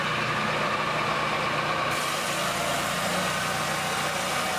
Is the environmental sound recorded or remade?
recorded